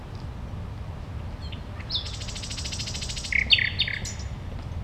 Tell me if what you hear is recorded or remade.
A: recorded